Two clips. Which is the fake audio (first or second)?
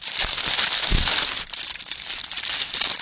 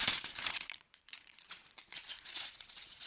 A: second